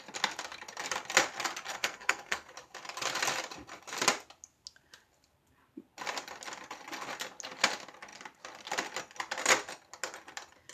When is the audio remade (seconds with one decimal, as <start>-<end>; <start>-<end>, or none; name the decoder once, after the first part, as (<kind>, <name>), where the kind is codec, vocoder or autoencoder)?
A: 1.7-2.5 (codec, SNAC)